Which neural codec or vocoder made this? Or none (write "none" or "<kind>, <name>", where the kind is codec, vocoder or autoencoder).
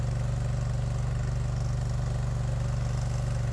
none